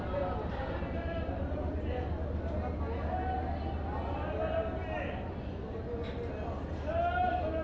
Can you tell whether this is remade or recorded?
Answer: recorded